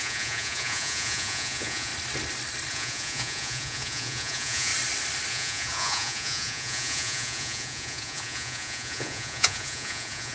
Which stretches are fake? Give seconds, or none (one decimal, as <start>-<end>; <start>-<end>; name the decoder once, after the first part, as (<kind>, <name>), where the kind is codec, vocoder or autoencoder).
0.0-1.9 (vocoder, Vocos); 2.7-4.7; 5.3-10.3